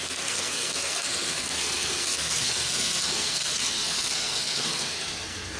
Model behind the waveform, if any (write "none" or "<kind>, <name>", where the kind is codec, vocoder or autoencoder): codec, SNAC